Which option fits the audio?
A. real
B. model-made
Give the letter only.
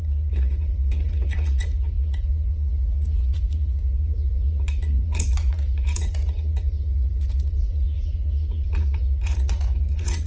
B